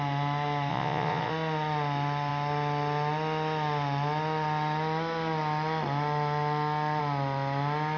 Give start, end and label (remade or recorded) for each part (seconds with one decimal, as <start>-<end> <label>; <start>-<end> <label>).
0.0-0.7 recorded; 0.7-1.3 remade; 1.3-8.0 recorded

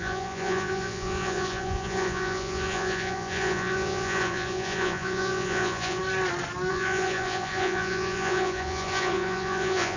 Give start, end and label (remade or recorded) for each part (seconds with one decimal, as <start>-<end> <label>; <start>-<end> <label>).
0.0-6.0 remade; 6.0-6.7 recorded; 6.7-10.0 remade

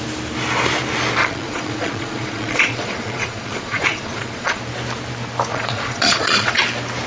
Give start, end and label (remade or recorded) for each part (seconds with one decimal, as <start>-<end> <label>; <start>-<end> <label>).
0.0-1.2 recorded; 1.2-4.6 remade; 4.6-5.5 recorded; 5.5-6.6 remade; 6.6-7.1 recorded

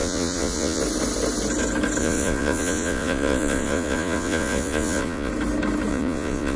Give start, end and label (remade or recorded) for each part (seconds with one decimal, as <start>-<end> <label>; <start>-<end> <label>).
0.0-0.8 remade; 0.8-2.0 recorded; 2.0-5.3 remade; 5.3-5.9 recorded; 5.9-6.6 remade

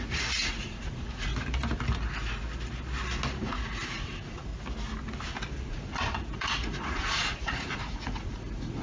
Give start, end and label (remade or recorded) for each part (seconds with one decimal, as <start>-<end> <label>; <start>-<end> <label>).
0.0-1.3 remade; 1.3-3.4 recorded; 3.4-4.5 remade; 4.5-5.7 recorded; 5.7-8.8 remade

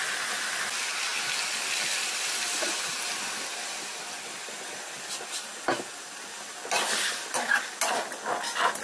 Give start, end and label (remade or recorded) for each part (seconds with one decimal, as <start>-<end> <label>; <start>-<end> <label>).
0.0-8.8 recorded

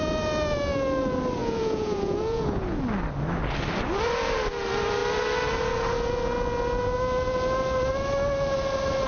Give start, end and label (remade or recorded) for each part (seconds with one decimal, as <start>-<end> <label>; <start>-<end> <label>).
0.0-1.4 recorded; 1.4-2.8 remade; 2.8-9.1 recorded

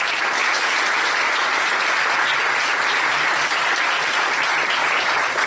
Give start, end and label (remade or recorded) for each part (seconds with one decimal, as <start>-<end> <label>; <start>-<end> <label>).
0.0-5.5 recorded